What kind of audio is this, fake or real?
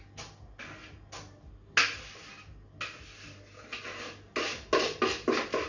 real